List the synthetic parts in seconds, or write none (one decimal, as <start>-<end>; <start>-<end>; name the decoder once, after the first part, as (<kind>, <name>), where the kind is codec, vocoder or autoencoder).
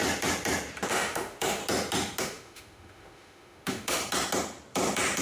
0.9-1.6 (autoencoder, DAC-VAE); 2.2-4.0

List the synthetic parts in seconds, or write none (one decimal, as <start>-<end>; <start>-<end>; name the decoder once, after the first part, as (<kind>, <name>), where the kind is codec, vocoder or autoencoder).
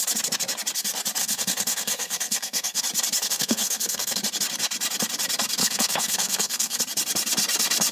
1.2-2.8 (codec, SNAC); 3.2-4.2; 5.6-6.8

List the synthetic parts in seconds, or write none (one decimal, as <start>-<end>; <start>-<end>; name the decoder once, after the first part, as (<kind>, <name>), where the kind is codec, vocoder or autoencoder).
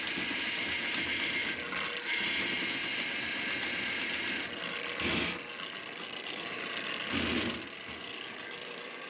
none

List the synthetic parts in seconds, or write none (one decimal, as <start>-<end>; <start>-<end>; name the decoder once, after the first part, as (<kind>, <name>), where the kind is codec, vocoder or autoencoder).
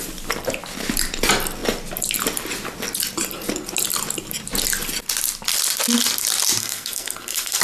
6.6-7.6 (codec, SNAC)